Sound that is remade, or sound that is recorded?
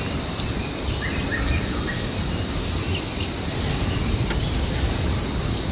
recorded